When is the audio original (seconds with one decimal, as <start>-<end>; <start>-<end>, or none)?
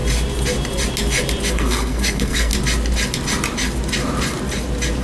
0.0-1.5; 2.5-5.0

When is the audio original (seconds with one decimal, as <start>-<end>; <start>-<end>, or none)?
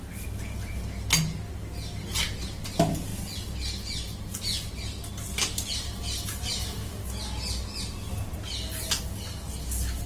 0.0-10.1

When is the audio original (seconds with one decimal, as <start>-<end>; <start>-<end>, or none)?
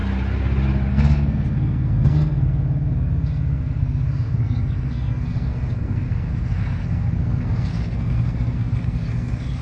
0.0-0.9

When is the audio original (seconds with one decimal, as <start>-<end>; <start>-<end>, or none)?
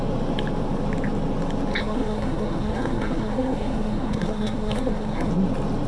0.0-1.8; 5.3-5.9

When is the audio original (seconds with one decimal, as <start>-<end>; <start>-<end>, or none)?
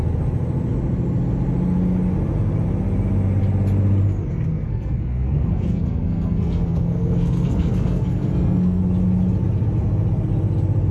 0.0-4.5; 8.8-10.9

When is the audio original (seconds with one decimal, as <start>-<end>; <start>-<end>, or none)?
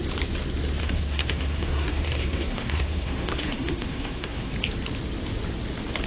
0.0-0.8; 4.5-6.1